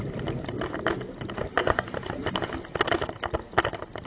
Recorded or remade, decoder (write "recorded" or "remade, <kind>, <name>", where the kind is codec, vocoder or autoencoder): recorded